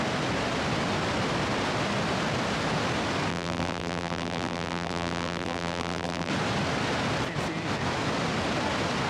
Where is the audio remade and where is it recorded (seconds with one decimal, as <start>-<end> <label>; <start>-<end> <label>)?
0.0-3.3 recorded; 3.3-6.3 remade; 6.3-9.1 recorded

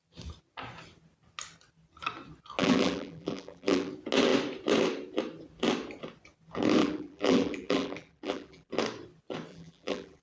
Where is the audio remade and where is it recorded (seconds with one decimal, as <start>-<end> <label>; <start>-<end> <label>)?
0.0-2.6 recorded; 2.6-3.9 remade; 3.9-6.8 recorded; 6.8-8.7 remade; 8.7-9.5 recorded; 9.5-10.2 remade

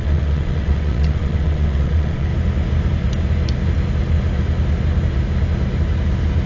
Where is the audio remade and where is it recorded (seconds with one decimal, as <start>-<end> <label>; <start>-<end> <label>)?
0.0-2.3 remade; 2.3-6.5 recorded

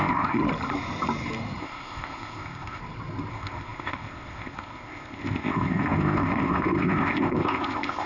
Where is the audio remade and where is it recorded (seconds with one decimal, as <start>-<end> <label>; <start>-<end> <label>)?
0.0-0.4 remade; 0.4-1.6 recorded; 1.6-2.8 remade; 2.8-3.3 recorded; 3.3-8.1 remade

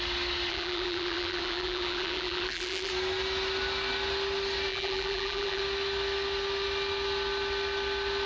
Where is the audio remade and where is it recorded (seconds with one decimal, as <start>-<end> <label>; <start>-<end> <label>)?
0.0-0.5 recorded; 0.5-2.9 remade; 2.9-4.7 recorded; 4.7-5.6 remade; 5.6-8.3 recorded

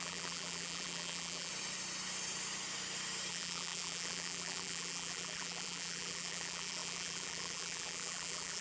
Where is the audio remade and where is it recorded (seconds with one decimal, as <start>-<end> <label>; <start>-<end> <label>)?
0.0-1.5 remade; 1.5-3.3 recorded; 3.3-8.6 remade

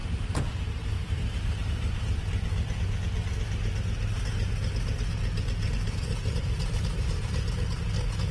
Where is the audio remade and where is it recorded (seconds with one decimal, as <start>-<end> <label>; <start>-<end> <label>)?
0.0-2.8 remade; 2.8-6.2 recorded; 6.2-7.8 remade; 7.8-8.3 recorded

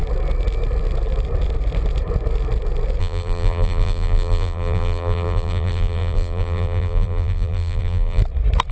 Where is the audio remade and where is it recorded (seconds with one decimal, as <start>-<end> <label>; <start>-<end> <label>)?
0.0-3.0 recorded; 3.0-8.2 remade; 8.2-8.7 recorded